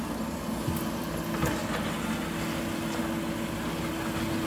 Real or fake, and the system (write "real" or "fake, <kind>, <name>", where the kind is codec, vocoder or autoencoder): real